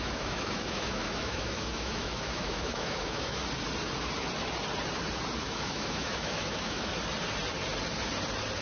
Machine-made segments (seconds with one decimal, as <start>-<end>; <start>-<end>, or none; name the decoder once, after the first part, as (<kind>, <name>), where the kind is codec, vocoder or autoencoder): 0.0-3.4 (autoencoder, DAC-VAE); 5.4-6.9